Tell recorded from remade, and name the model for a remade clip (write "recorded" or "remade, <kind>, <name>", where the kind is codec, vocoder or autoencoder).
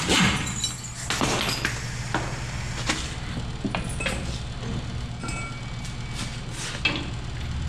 recorded